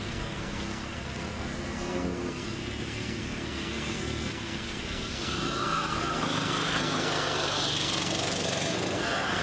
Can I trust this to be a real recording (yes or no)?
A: no